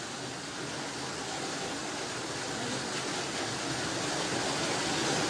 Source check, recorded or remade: recorded